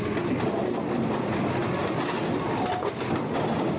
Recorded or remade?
recorded